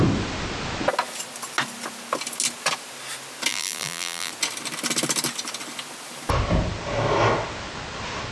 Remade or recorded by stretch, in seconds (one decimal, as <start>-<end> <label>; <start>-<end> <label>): 0.0-3.5 recorded; 3.5-4.3 remade; 4.3-8.3 recorded